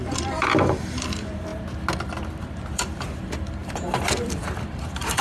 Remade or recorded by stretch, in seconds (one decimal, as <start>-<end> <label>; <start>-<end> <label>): 0.0-1.5 remade; 1.5-2.4 recorded; 2.4-5.2 remade